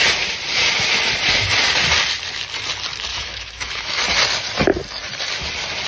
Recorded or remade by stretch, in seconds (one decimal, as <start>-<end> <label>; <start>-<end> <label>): 0.0-3.1 recorded; 3.1-4.0 remade; 4.0-5.9 recorded